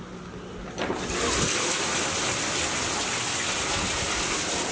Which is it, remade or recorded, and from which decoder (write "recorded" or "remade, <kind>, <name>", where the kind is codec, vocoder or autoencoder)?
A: recorded